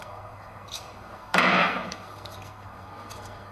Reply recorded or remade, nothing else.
remade